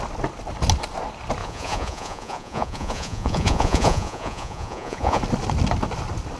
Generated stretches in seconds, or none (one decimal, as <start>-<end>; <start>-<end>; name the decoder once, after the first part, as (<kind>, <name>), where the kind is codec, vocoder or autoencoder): 1.4-5.2 (vocoder, Vocos)